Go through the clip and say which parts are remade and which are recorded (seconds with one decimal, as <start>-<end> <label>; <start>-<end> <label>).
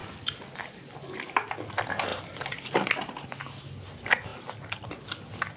0.0-2.1 recorded; 2.1-2.9 remade; 2.9-5.6 recorded